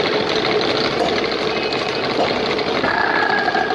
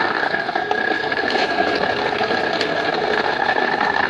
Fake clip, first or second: second